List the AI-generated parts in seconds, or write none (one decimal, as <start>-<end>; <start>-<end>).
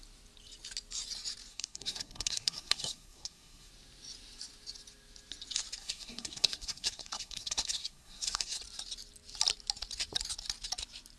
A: 1.5-3.7; 5.8-8.6